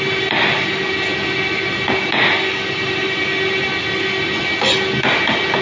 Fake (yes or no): no